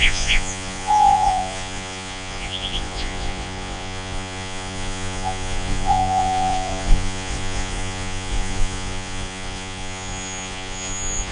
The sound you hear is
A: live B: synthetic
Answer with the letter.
B